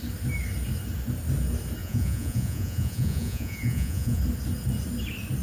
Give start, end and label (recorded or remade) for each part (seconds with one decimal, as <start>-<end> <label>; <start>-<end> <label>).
0.0-1.8 recorded; 1.8-4.2 remade; 4.2-5.4 recorded